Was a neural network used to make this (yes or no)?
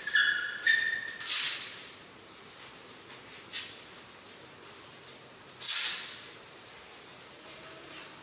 no